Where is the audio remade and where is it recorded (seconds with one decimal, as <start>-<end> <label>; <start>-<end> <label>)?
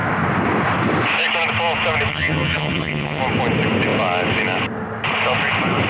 0.0-2.1 recorded; 2.1-3.2 remade; 3.2-5.9 recorded